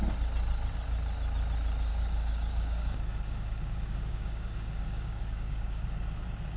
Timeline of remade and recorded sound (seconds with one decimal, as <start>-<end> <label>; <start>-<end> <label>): 0.0-1.9 recorded; 1.9-5.9 remade; 5.9-6.6 recorded